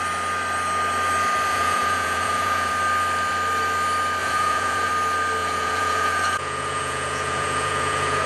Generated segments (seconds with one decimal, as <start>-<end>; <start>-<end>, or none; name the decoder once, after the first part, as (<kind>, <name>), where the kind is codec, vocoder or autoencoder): 1.5-2.7 (vocoder, Vocos); 4.2-4.9; 5.4-8.3